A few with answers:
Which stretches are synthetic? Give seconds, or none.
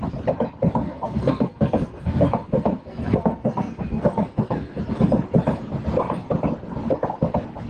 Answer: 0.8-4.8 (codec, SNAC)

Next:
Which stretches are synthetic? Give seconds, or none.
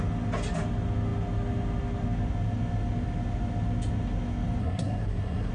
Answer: 4.6-5.5 (codec, SNAC)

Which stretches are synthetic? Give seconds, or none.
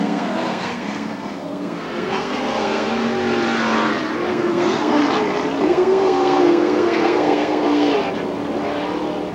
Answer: 0.0-3.0 (codec, SNAC); 4.3-5.0; 5.6-7.9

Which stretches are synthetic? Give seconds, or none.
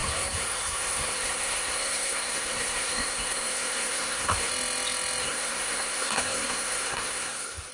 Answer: 0.0-4.5 (codec, SNAC); 5.2-7.7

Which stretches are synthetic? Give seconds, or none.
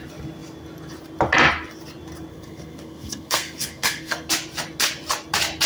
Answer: 2.3-4.3 (codec, SNAC)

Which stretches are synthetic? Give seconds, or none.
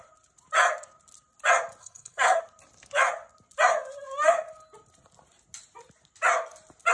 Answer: 1.8-2.4 (codec, SNAC)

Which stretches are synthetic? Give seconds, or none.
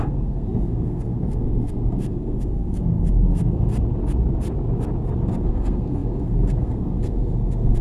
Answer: 0.0-3.7 (codec, SNAC); 5.4-7.8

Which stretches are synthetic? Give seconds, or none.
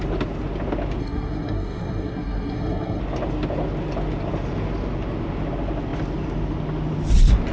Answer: 1.0-3.0 (codec, SNAC)